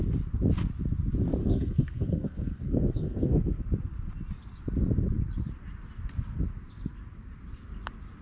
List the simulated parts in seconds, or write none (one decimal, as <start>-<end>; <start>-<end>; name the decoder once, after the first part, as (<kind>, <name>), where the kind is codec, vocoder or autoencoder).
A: 1.4-3.6 (codec, SNAC)